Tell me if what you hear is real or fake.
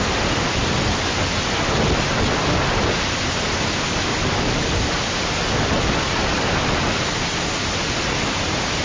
real